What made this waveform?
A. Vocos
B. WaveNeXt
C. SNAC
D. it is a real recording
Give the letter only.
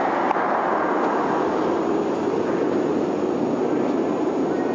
D